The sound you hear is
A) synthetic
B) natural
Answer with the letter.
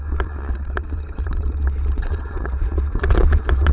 A